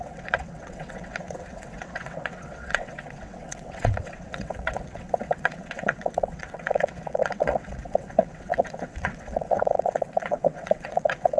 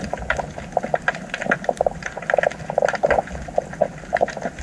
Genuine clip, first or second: second